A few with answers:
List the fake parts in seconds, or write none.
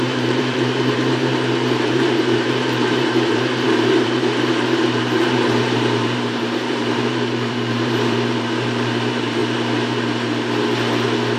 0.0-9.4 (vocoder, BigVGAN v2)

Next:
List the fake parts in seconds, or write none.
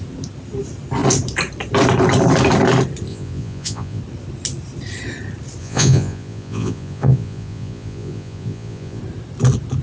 3.1-4.0 (vocoder, Vocos); 5.6-9.0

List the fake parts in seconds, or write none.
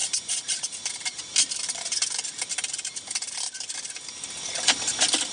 0.0-5.3 (vocoder, BigVGAN v2)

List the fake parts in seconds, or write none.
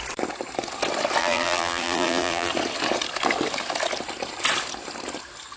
1.2-2.5 (vocoder, BigVGAN v2)